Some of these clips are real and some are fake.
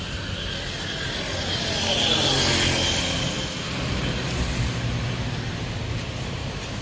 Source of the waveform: real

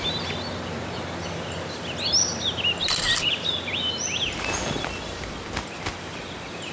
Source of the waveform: real